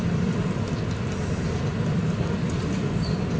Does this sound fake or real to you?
real